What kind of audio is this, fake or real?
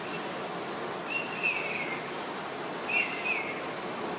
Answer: real